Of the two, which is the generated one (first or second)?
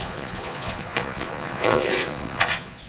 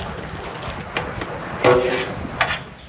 first